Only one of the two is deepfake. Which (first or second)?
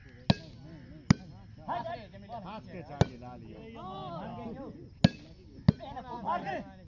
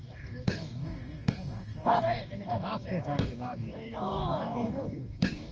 second